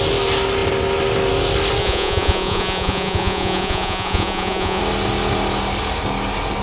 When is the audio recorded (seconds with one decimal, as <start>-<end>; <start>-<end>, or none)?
0.0-1.8; 4.8-6.6